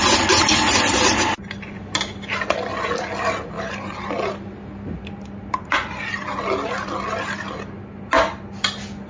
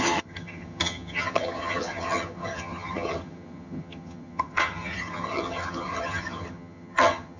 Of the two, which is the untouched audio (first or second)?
first